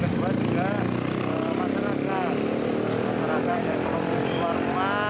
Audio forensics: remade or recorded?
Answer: recorded